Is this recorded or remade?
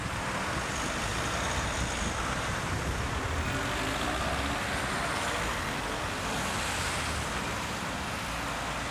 recorded